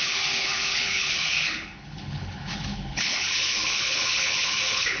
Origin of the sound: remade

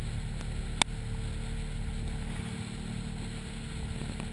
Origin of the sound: recorded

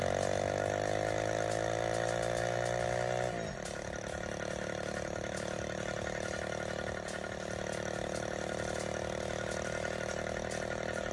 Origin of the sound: recorded